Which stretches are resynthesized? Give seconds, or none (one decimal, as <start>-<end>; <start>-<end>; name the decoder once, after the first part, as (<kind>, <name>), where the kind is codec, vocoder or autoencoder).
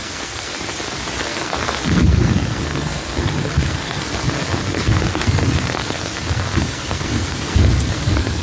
0.0-0.5 (codec, SNAC); 1.2-8.4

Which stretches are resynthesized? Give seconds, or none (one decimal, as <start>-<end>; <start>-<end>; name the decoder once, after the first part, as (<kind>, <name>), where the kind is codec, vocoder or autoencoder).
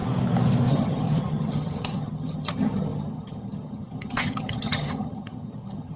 0.7-6.0 (vocoder, HiFi-GAN)